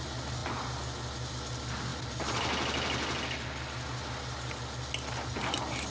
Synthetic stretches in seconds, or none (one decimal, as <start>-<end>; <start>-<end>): none